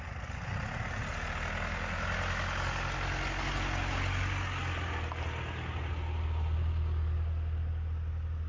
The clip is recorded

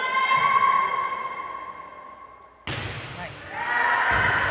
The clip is recorded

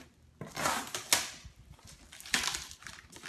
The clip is recorded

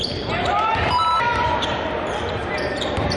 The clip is remade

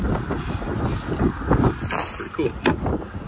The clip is recorded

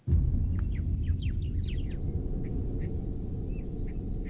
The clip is recorded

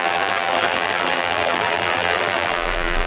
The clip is remade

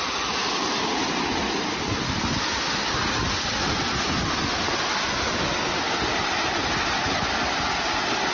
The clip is recorded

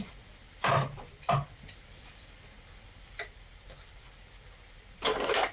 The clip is remade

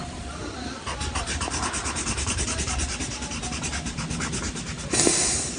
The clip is remade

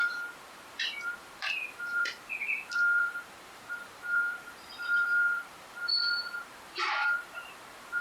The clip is remade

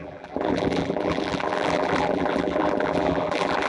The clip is remade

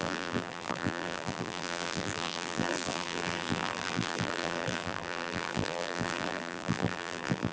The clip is remade